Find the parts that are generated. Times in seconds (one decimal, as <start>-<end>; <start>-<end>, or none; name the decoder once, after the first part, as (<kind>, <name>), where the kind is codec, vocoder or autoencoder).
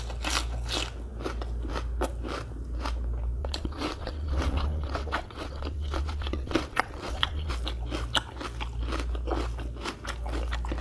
3.4-7.5 (vocoder, WaveNeXt)